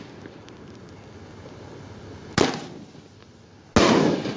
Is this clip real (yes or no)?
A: yes